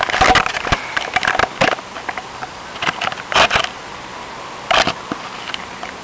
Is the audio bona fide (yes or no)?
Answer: yes